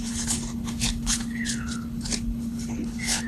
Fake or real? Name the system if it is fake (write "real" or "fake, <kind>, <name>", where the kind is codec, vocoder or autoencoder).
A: fake, codec, HILCodec